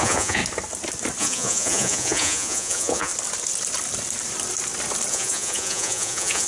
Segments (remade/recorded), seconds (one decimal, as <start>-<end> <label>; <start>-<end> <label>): 0.0-0.4 remade; 0.4-1.2 recorded; 1.2-3.1 remade; 3.1-5.1 recorded; 5.1-6.5 remade